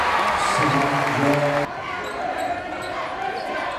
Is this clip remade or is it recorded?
recorded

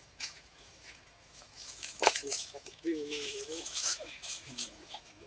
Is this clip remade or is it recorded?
remade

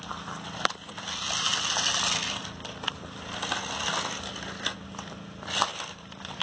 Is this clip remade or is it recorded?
recorded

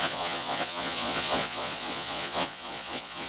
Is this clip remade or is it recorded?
remade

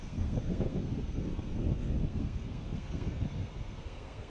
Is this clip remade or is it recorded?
remade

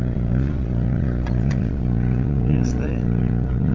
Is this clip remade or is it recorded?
remade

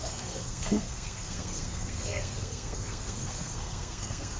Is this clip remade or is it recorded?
remade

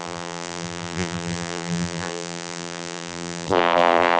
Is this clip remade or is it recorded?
remade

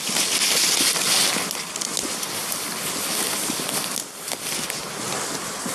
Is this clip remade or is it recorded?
recorded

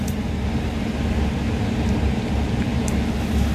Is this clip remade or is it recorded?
recorded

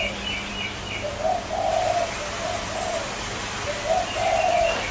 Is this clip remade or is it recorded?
recorded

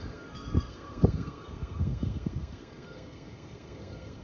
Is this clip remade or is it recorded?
remade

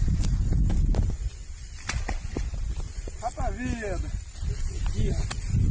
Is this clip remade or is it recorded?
recorded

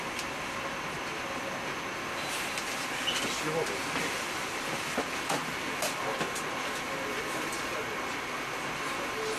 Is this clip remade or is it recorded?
recorded